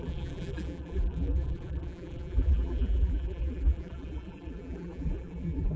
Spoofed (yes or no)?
yes